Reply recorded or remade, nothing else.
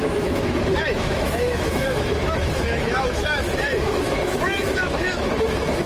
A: remade